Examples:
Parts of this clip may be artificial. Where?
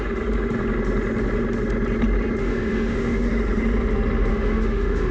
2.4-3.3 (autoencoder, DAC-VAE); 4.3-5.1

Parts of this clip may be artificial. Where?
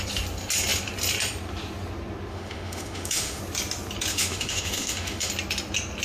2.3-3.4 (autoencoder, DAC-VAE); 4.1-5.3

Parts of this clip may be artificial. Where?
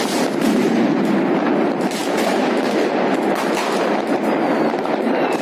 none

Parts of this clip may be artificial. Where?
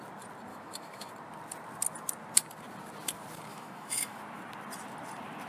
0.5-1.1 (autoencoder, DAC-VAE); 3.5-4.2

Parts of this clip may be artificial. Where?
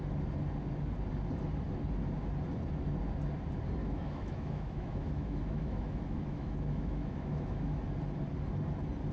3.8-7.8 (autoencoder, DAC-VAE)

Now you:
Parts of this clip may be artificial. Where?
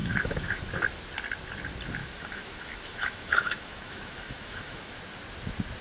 0.0-0.6 (autoencoder, DAC-VAE); 2.0-5.0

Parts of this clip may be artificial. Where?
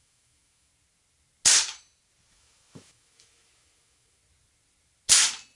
0.0-0.7 (autoencoder, DAC-VAE); 2.3-4.2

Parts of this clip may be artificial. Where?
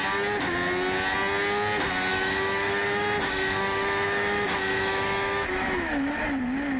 2.1-6.2 (autoencoder, DAC-VAE)